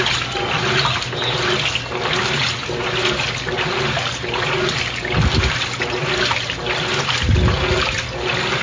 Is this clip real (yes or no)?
yes